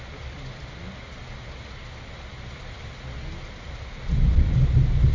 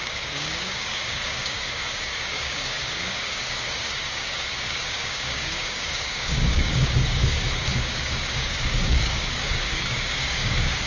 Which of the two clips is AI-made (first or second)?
second